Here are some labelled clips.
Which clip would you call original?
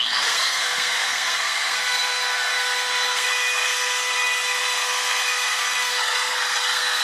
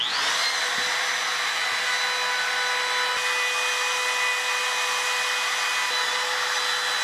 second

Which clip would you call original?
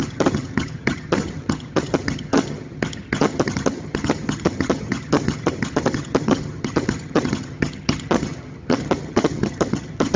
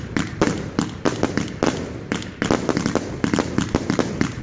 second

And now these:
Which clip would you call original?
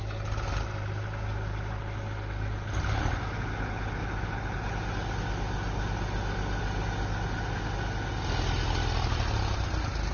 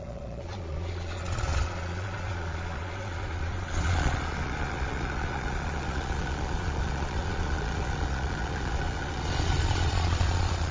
first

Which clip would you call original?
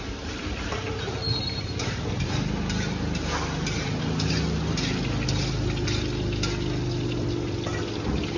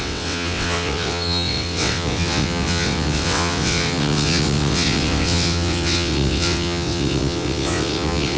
first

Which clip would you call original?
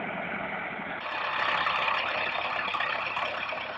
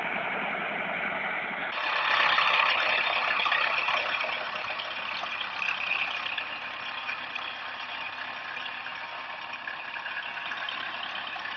second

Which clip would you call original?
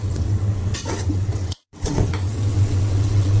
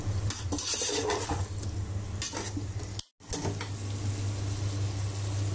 second